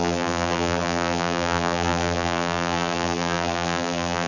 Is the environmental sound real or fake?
fake